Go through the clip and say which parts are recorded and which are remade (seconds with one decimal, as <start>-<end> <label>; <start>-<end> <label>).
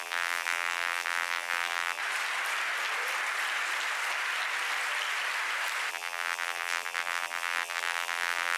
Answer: 0.0-2.0 remade; 2.0-5.9 recorded; 5.9-8.6 remade